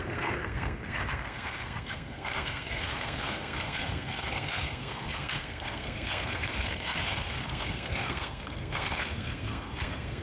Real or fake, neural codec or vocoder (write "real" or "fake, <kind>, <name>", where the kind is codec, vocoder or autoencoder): fake, codec, SNAC